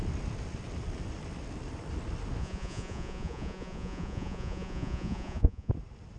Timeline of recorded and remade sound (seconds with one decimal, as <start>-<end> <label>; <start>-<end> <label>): 0.0-2.4 recorded; 2.4-5.7 remade; 5.7-6.2 recorded